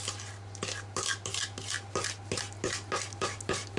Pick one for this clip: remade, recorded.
recorded